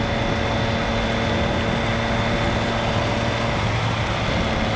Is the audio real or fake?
real